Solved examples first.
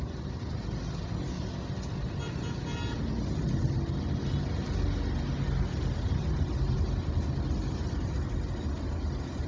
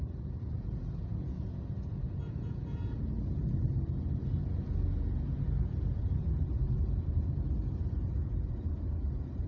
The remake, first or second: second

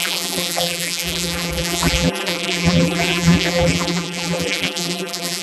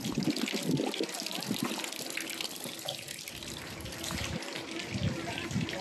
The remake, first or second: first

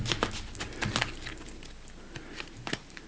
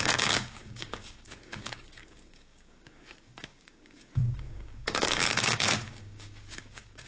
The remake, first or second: second